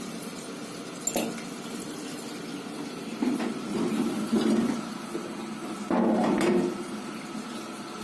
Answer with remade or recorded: recorded